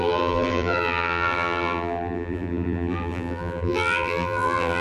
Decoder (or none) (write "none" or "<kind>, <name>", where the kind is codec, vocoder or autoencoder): vocoder, BigVGAN v2